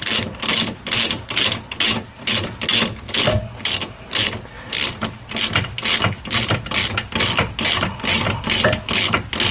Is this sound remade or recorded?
recorded